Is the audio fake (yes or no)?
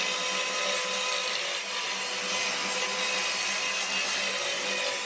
no